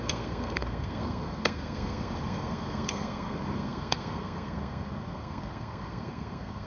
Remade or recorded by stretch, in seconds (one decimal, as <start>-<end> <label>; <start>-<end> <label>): 0.0-6.7 remade